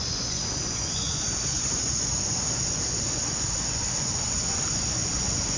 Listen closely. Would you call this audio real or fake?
fake